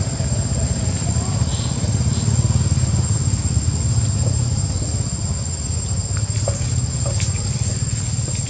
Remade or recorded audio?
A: recorded